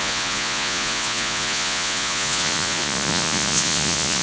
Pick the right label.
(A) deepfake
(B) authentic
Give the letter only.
A